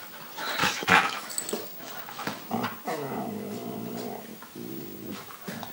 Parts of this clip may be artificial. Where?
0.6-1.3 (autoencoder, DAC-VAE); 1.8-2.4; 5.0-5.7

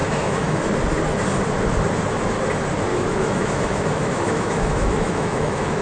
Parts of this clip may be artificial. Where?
0.0-0.6 (autoencoder, DAC-VAE); 2.9-5.8